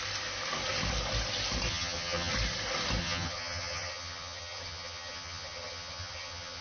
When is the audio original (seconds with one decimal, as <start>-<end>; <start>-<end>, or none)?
0.0-1.7; 2.3-3.0